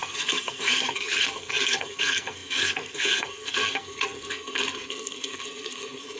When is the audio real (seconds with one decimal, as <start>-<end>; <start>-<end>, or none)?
none